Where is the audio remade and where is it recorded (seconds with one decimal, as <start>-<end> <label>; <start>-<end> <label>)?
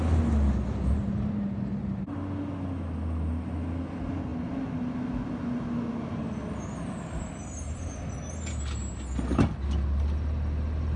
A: 0.0-11.0 recorded